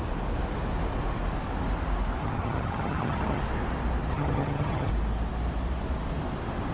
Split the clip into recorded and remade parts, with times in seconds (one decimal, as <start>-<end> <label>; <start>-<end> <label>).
0.0-2.2 recorded; 2.2-3.4 remade; 3.4-4.1 recorded; 4.1-4.9 remade; 4.9-6.7 recorded